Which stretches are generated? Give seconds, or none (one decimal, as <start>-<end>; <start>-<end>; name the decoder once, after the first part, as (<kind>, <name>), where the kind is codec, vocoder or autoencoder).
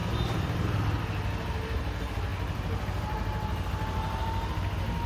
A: 0.0-0.8 (vocoder, BigVGAN v2)